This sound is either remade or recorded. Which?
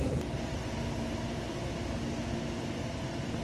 recorded